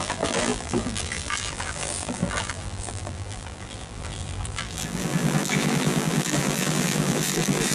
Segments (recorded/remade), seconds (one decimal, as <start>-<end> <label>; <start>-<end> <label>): 0.0-7.7 remade